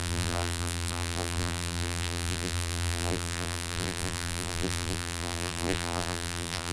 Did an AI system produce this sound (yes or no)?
yes